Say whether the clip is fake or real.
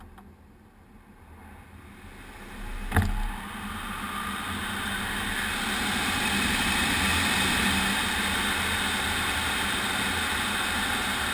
real